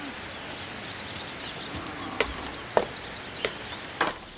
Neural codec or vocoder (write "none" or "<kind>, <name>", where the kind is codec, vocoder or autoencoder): none